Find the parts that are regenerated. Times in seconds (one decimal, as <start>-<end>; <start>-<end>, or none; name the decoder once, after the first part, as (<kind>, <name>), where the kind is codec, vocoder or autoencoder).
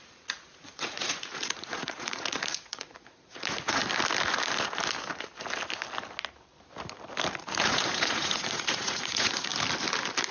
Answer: 0.0-3.8 (vocoder, Vocos); 7.4-9.5